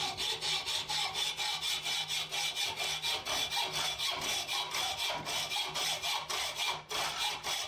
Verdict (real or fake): real